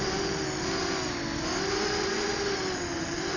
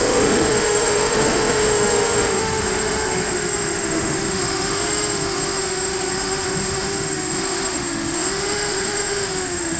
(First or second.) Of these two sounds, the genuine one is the first